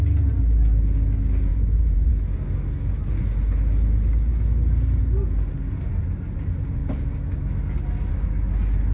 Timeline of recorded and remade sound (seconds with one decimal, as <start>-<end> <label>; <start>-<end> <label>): 0.0-1.5 recorded; 1.5-2.1 remade; 2.1-8.9 recorded